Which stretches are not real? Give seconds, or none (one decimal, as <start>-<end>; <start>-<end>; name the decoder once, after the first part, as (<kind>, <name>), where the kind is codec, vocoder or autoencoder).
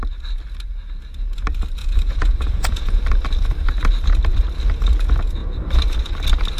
1.8-3.0 (vocoder, Vocos)